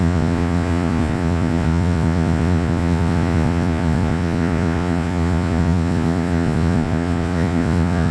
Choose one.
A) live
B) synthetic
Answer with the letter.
B